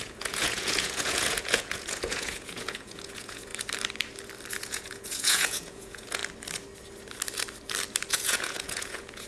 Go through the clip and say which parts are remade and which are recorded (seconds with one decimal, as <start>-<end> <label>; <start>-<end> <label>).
0.0-3.5 remade; 3.5-4.5 recorded; 4.5-6.2 remade; 6.2-8.1 recorded; 8.1-9.3 remade